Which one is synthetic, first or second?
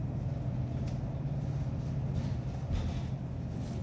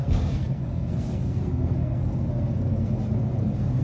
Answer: second